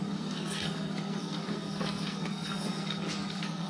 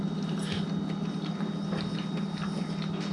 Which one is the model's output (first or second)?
first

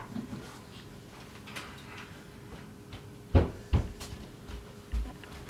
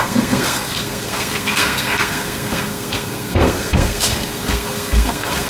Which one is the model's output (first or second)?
second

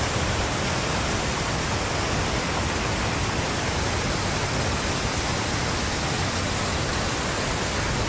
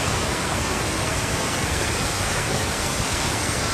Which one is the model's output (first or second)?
second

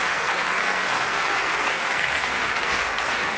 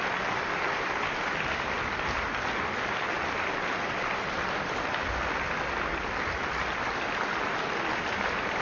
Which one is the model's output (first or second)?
first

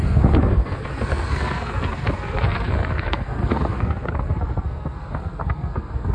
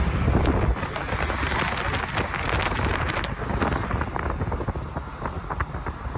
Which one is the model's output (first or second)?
first